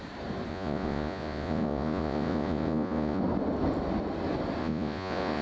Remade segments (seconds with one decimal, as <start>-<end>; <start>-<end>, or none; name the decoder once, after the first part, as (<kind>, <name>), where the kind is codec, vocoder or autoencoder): 0.5-3.2 (vocoder, Vocos); 4.6-5.4